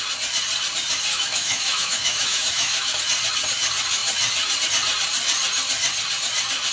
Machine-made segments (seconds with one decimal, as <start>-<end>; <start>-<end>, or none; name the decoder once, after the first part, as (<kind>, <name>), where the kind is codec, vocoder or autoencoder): 1.1-3.0 (autoencoder, DAC-VAE)